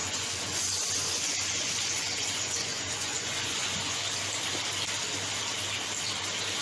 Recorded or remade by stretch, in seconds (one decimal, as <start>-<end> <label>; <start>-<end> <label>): 0.0-4.0 remade; 4.0-6.6 recorded

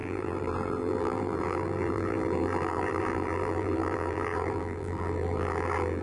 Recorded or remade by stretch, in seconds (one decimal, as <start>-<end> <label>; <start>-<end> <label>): 0.0-6.0 remade

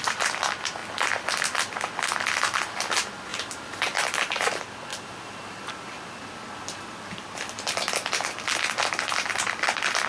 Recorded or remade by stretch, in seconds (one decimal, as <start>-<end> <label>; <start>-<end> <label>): 0.0-3.3 recorded; 3.3-4.5 remade; 4.5-4.9 recorded; 4.9-5.7 remade; 5.7-10.1 recorded

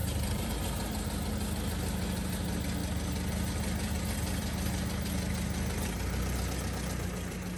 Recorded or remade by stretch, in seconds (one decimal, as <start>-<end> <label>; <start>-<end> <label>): 0.0-0.5 remade; 0.5-7.6 recorded

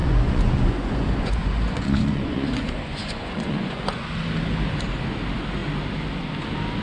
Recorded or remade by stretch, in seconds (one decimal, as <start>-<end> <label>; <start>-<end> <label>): 0.0-4.1 remade; 4.1-6.8 recorded